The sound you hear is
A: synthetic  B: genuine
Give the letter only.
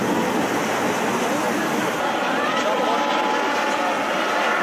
B